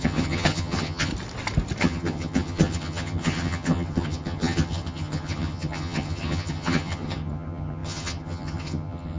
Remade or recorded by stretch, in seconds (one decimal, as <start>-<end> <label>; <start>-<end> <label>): 0.0-1.1 remade; 1.1-1.8 recorded; 1.8-9.2 remade